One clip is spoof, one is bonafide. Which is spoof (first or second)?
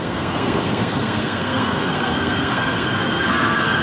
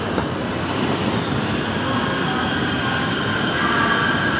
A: first